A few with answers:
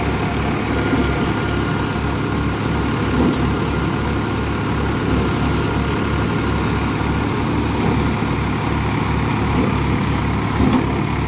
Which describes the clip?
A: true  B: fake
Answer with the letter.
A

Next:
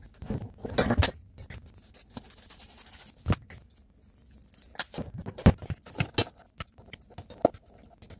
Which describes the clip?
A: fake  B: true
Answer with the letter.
B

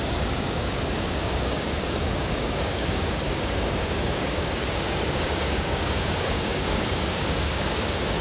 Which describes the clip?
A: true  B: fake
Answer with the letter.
B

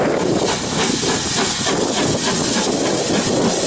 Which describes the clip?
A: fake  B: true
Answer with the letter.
B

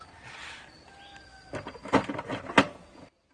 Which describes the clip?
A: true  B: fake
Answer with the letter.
A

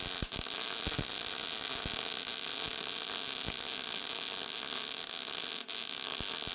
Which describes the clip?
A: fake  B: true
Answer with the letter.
B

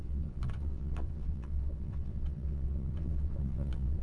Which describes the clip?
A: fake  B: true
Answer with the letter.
A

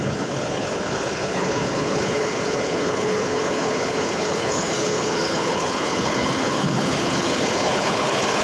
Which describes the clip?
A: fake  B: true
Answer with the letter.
A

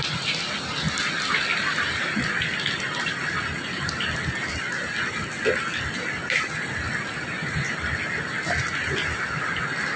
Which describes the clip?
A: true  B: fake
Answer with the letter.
A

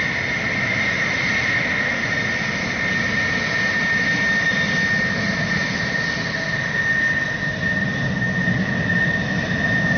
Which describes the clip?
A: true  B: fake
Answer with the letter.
A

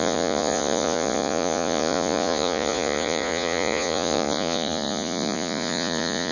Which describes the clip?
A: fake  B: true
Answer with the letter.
A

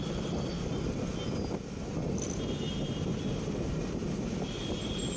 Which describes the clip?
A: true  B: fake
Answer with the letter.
A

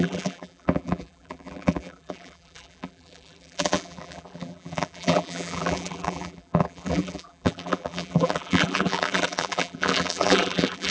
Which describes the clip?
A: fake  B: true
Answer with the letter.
A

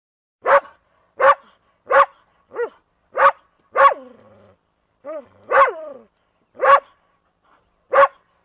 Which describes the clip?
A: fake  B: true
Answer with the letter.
B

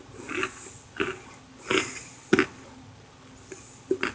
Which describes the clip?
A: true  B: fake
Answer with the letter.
A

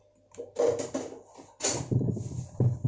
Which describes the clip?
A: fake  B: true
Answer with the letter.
B